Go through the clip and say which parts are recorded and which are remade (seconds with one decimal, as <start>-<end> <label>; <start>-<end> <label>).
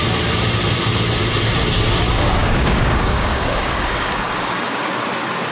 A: 0.0-2.4 recorded; 2.4-4.9 remade; 4.9-5.5 recorded